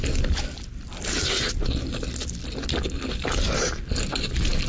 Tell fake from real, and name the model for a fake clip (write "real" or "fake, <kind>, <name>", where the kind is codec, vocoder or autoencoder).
real